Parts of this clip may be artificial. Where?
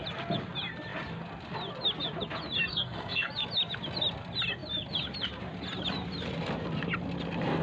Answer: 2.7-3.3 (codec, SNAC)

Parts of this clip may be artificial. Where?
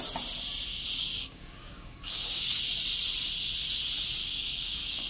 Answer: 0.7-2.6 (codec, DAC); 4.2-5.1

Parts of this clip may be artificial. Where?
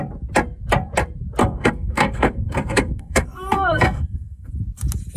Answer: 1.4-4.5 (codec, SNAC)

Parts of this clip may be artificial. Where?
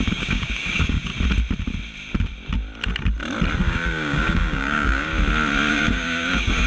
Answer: 0.0-1.1 (codec, DAC); 3.6-5.1; 5.7-6.7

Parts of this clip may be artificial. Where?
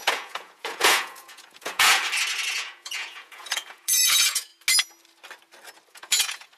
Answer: 0.0-2.0 (vocoder, Vocos); 2.5-4.5; 5.9-6.6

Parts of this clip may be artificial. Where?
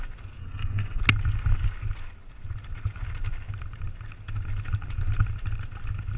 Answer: 0.4-1.0 (codec, SNAC)